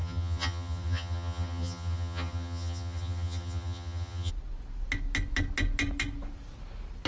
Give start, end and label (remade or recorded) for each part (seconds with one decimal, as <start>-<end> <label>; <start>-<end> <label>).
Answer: 0.0-4.3 remade; 4.3-7.1 recorded